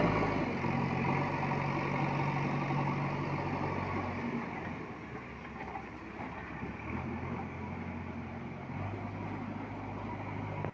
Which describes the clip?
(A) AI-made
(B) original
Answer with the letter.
B